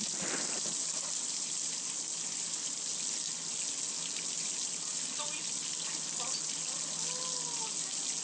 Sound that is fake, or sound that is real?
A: real